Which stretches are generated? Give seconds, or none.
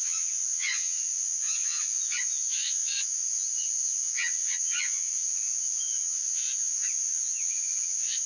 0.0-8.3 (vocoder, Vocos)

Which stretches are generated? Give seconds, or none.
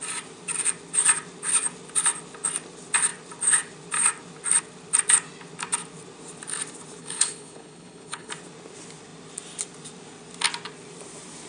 7.0-8.3 (codec, HILCodec)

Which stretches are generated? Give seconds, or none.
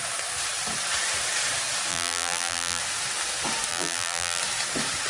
1.9-2.8 (vocoder, BigVGAN v2); 3.7-4.4